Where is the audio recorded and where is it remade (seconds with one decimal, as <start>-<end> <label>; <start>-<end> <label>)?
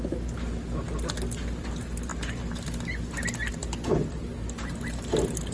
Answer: 0.0-5.5 recorded